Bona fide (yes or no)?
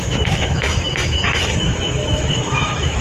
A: no